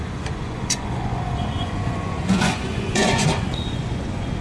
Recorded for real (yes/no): no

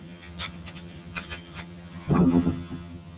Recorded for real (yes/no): no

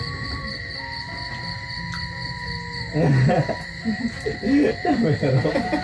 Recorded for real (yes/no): yes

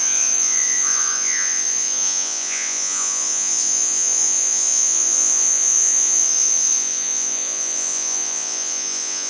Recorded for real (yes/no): no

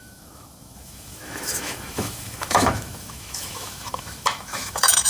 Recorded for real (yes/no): no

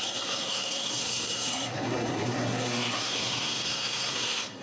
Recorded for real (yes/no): no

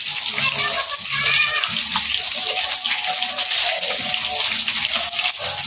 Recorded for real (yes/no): yes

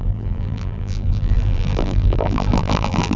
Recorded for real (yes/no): no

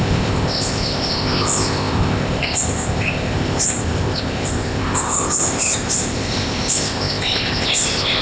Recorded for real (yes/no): no